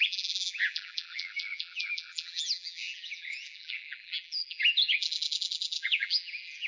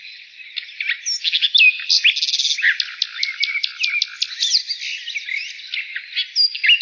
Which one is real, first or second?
second